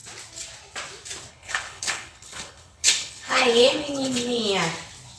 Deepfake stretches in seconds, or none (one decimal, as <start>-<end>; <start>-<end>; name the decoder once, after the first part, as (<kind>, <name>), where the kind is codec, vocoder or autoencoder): 1.3-4.4 (codec, HILCodec)